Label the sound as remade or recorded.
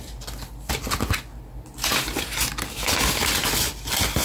recorded